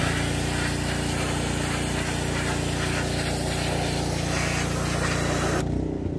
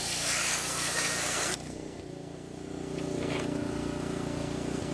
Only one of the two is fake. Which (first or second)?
second